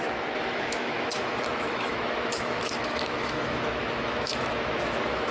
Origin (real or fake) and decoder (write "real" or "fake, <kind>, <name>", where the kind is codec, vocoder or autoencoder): fake, autoencoder, DAC-VAE